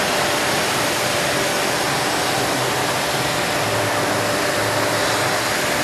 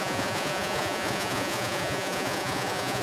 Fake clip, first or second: second